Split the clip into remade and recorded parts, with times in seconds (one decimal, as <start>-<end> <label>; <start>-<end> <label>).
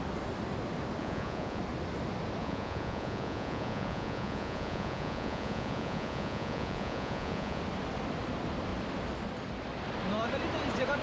0.0-1.0 recorded; 1.0-1.6 remade; 1.6-2.4 recorded; 2.4-7.6 remade; 7.6-11.0 recorded